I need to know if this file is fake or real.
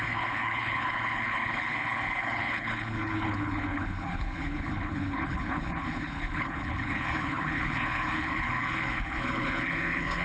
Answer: fake